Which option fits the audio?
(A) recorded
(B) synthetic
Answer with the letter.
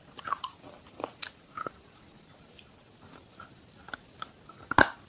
A